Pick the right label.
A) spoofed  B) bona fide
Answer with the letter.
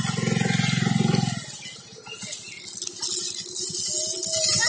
B